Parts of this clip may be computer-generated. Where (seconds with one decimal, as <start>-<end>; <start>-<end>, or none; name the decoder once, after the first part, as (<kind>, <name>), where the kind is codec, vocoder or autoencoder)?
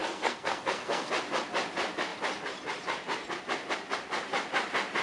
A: 0.0-1.1 (codec, SNAC)